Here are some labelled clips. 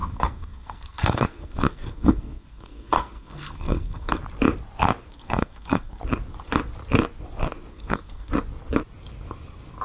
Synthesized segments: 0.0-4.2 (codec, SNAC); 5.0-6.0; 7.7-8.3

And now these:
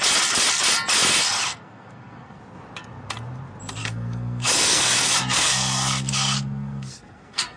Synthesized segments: 1.5-2.4 (codec, SNAC); 3.8-7.6

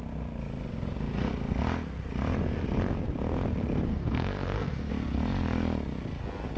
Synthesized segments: 3.9-4.9 (codec, SNAC)

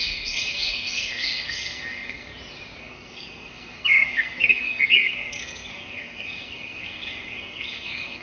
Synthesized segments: 0.0-2.3 (codec, SNAC); 2.8-8.2

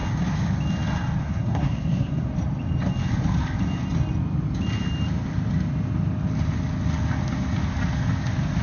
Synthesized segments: 1.2-2.3 (codec, SNAC)

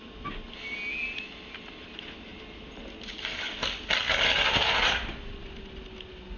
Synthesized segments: none

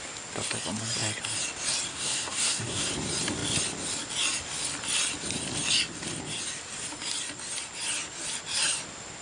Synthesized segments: 1.9-2.9 (codec, SNAC)

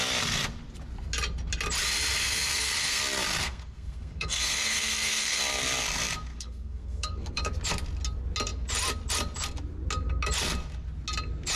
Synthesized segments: 2.2-3.0 (codec, SNAC); 3.4-5.4; 6.3-7.4